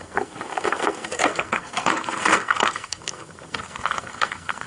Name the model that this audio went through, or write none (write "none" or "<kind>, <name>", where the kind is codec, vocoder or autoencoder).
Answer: codec, SNAC